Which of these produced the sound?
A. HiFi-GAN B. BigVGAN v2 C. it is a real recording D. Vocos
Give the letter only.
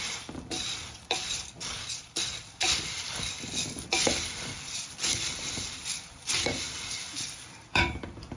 B